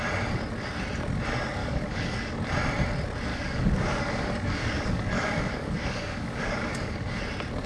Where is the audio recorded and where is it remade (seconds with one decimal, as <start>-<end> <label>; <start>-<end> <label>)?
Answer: 0.0-1.6 recorded; 1.6-2.4 remade; 2.4-3.3 recorded; 3.3-7.2 remade; 7.2-7.7 recorded

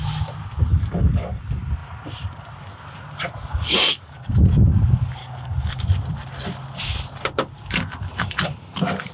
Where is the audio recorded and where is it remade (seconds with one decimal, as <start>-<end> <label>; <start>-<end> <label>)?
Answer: 0.0-0.7 recorded; 0.7-1.4 remade; 1.4-3.5 recorded; 3.5-4.4 remade; 4.4-5.2 recorded; 5.2-5.8 remade; 5.8-9.1 recorded

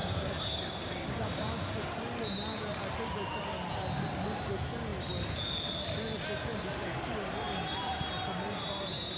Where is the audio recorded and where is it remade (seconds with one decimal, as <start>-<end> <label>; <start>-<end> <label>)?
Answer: 0.0-1.9 remade; 1.9-9.2 recorded

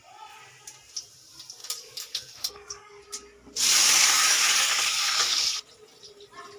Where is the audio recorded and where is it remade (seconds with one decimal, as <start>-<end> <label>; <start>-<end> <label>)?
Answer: 0.0-1.6 recorded; 1.6-3.0 remade; 3.0-3.8 recorded; 3.8-5.4 remade; 5.4-6.6 recorded

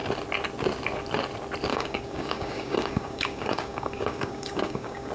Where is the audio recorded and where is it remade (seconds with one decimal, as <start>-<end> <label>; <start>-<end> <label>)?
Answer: 0.0-1.7 recorded; 1.7-5.1 remade

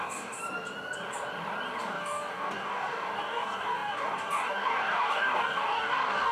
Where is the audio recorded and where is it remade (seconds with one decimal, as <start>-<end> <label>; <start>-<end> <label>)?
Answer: 0.0-0.4 remade; 0.4-1.8 recorded; 1.8-6.3 remade